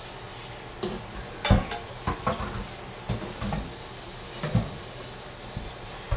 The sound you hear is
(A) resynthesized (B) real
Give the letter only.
B